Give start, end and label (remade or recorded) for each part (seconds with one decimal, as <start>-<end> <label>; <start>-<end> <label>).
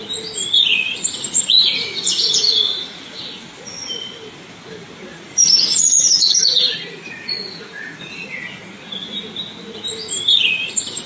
0.0-0.7 recorded; 0.7-3.2 remade; 3.2-5.1 recorded; 5.1-8.6 remade; 8.6-11.1 recorded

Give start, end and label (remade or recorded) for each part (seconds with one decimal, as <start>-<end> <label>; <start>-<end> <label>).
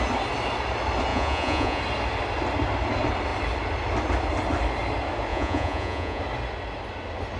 0.0-1.1 recorded; 1.1-1.8 remade; 1.8-5.3 recorded; 5.3-6.2 remade; 6.2-7.4 recorded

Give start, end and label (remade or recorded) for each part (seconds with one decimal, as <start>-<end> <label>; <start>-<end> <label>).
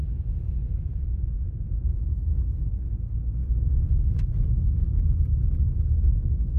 0.0-0.5 remade; 0.5-0.9 recorded; 0.9-2.2 remade; 2.2-3.4 recorded; 3.4-4.1 remade; 4.1-6.6 recorded